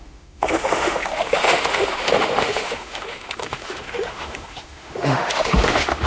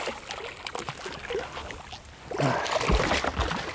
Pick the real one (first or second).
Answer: second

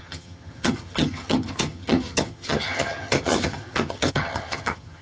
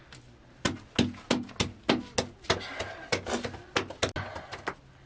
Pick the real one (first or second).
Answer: second